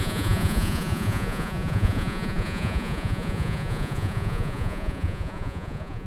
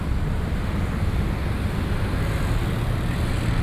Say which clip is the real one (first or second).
second